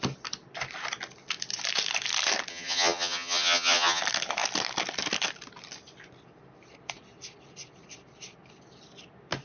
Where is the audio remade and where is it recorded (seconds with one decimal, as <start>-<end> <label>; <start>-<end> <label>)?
0.0-2.5 recorded; 2.5-4.0 remade; 4.0-9.4 recorded